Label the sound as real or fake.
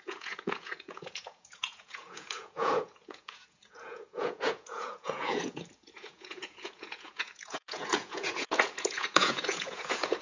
fake